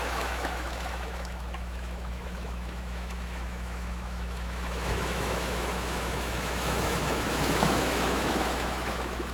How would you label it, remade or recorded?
remade